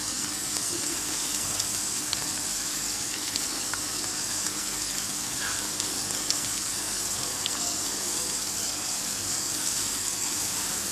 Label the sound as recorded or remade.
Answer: remade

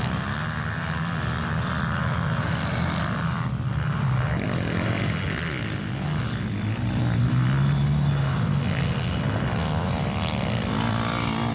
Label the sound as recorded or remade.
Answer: recorded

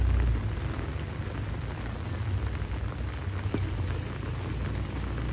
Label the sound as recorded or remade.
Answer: recorded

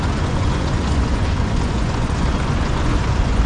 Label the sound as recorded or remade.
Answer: remade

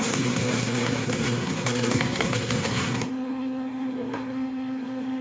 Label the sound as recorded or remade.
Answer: remade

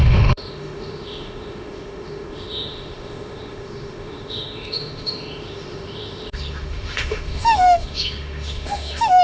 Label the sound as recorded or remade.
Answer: remade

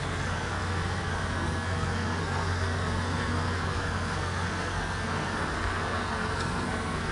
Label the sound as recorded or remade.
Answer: remade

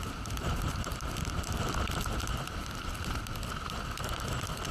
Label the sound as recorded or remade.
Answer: remade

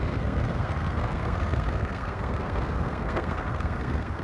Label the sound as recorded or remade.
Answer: remade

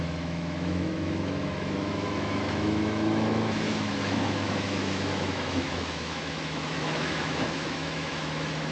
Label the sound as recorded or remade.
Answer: remade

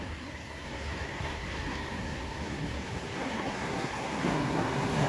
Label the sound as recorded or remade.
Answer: remade